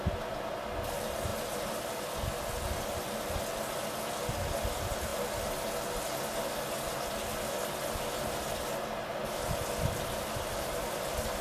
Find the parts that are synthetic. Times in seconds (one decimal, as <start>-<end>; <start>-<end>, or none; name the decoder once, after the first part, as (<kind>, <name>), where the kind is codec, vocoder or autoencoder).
none